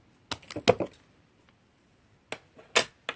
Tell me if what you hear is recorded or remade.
recorded